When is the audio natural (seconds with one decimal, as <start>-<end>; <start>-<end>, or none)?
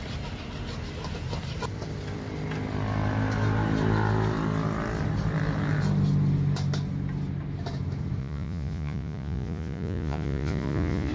0.0-8.2